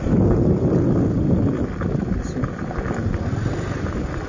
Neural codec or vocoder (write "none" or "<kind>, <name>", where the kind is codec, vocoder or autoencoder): none